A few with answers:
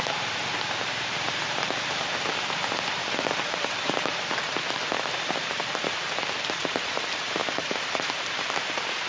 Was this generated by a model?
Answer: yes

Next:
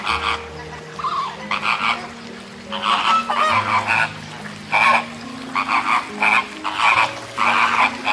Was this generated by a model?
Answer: no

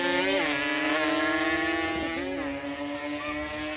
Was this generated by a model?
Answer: no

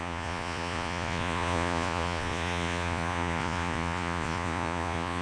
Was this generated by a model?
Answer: yes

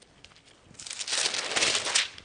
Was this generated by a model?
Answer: no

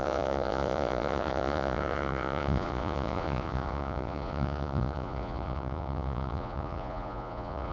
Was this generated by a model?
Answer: yes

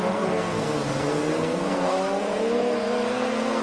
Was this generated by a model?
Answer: yes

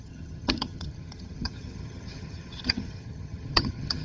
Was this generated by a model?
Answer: yes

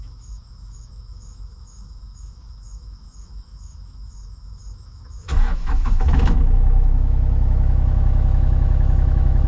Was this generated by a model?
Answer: yes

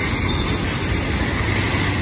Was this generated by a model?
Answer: no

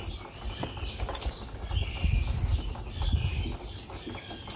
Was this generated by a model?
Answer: no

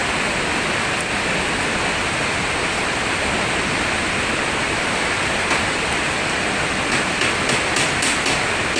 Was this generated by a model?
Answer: no